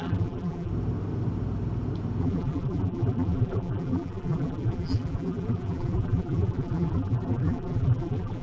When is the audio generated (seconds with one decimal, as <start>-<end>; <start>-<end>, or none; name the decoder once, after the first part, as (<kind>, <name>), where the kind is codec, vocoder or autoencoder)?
0.0-0.7 (vocoder, BigVGAN v2); 2.2-8.4

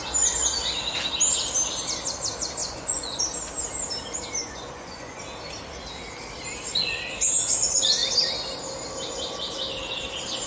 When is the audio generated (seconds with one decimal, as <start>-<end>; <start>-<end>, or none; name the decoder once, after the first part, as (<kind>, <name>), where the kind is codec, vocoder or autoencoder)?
2.6-3.2 (vocoder, Vocos); 4.4-5.2

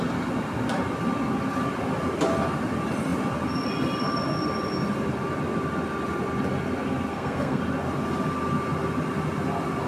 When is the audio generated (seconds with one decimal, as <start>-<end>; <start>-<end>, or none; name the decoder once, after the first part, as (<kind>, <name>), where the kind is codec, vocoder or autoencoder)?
7.1-7.6 (codec, SNAC)

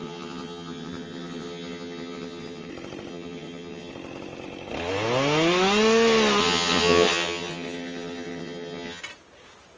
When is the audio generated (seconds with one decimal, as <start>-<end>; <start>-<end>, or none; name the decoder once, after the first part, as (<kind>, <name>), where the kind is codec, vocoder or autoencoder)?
0.0-2.7 (vocoder, HiFi-GAN); 3.1-3.9; 6.4-9.0

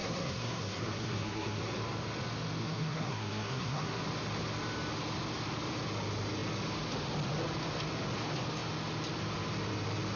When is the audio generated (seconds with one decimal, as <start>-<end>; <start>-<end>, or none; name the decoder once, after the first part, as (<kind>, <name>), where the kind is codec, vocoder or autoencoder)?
0.0-1.6 (codec, SNAC); 2.6-4.0